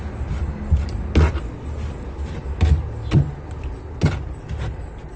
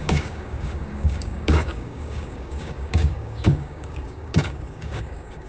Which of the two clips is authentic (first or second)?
first